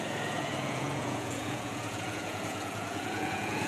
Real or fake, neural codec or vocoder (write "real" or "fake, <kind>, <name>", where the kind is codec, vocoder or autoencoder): fake, vocoder, Vocos